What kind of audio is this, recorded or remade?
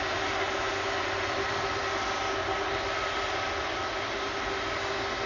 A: recorded